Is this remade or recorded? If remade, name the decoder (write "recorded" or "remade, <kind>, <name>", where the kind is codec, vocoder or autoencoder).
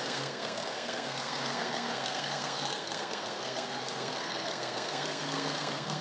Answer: remade, codec, SNAC